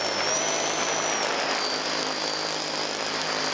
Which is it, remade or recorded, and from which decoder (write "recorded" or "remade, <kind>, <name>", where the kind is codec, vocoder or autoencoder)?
recorded